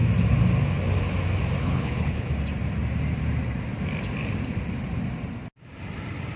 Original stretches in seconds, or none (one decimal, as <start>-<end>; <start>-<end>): 0.0-1.6; 2.3-6.4